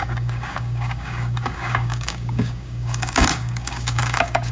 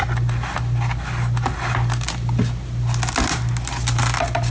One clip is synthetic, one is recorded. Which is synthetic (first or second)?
first